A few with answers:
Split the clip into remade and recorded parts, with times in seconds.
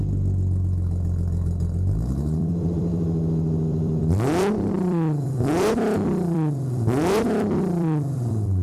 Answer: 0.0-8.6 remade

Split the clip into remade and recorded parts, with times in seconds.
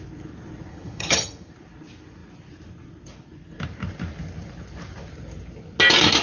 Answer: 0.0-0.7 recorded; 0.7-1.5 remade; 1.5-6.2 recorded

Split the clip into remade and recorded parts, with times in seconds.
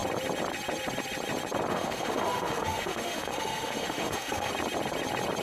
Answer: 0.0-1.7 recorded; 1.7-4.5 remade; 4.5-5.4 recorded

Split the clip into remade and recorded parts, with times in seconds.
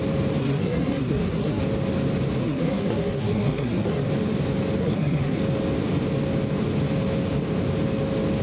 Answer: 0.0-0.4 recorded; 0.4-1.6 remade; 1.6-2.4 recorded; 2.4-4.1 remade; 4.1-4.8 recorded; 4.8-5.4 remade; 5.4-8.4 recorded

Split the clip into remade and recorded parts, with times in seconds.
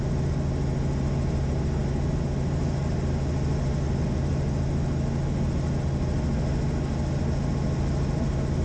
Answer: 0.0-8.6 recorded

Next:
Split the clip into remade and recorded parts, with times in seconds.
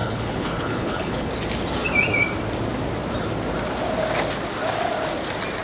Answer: 0.0-1.3 remade; 1.3-5.6 recorded